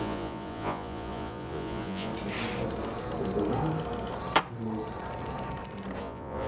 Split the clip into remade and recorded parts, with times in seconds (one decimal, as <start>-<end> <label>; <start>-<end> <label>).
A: 0.0-2.1 remade; 2.1-6.0 recorded; 6.0-6.5 remade